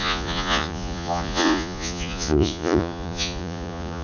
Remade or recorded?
remade